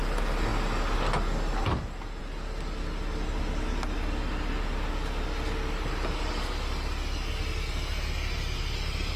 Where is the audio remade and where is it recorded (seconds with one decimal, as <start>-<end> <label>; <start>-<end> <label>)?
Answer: 0.0-9.2 recorded